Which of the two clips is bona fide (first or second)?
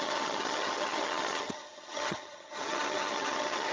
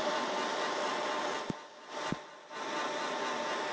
second